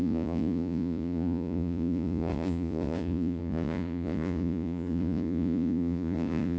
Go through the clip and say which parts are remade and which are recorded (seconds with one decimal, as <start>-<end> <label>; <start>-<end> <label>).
0.0-6.6 remade

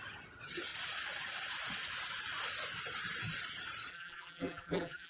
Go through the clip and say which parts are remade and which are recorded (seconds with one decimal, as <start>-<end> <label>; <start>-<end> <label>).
0.0-3.9 recorded; 3.9-5.1 remade

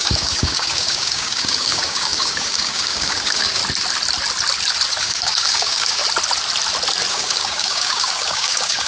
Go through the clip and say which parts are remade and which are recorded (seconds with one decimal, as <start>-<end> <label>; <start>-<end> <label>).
0.0-3.6 remade; 3.6-5.0 recorded; 5.0-6.0 remade; 6.0-7.1 recorded; 7.1-8.9 remade

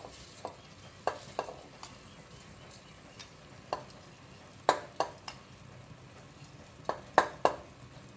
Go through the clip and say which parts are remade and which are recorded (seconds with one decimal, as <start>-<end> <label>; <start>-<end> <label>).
0.0-8.2 recorded

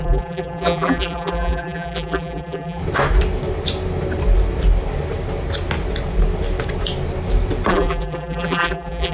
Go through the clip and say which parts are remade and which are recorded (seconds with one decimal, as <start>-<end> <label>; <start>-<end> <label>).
0.0-2.8 remade; 2.8-7.7 recorded; 7.7-9.1 remade

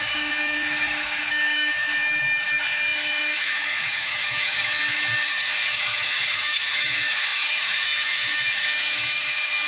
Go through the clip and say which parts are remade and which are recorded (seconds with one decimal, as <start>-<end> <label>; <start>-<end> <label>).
0.0-9.7 remade

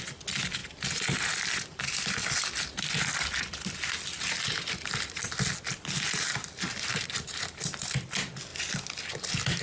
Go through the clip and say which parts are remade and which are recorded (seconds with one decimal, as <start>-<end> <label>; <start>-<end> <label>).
0.0-9.6 recorded

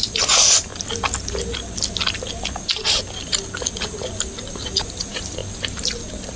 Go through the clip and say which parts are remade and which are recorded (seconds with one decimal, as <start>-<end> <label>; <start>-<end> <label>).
0.0-0.7 remade; 0.7-4.5 recorded; 4.5-5.4 remade; 5.4-6.4 recorded